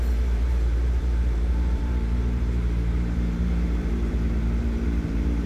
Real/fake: fake